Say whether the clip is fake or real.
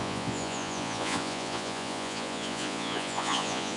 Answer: fake